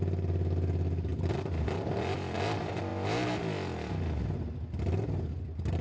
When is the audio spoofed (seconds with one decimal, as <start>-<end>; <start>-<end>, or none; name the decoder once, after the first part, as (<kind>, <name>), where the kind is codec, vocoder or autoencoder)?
none